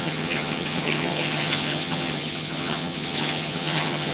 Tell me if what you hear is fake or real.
fake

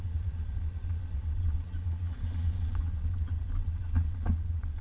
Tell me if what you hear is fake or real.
fake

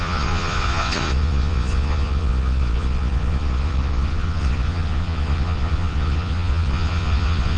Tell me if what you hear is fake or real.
fake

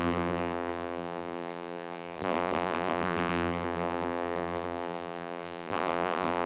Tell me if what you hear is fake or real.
fake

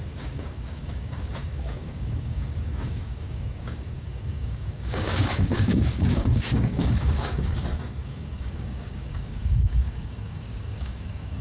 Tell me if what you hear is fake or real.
fake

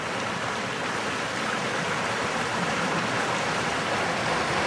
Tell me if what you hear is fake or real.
real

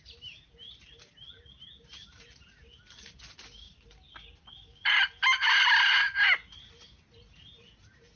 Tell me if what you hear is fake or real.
real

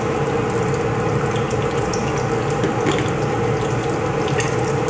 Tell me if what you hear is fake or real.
real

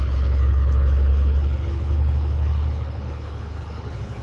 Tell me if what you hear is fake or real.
fake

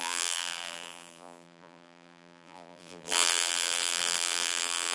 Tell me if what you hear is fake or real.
fake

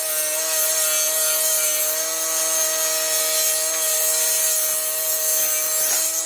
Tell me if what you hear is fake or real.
real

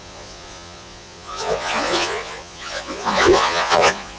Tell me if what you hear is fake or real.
fake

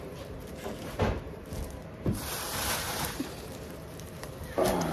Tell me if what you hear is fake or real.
fake